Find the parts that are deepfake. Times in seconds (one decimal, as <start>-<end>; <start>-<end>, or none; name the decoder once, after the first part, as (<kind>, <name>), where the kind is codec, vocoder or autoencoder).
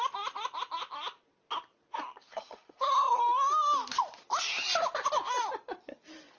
2.3-3.2 (codec, SNAC)